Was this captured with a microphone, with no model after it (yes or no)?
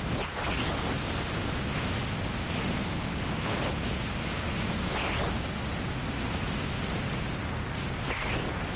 yes